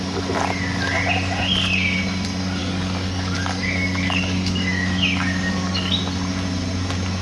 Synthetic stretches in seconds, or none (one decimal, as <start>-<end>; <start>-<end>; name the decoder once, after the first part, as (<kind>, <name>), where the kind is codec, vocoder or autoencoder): 2.6-6.0 (codec, DAC)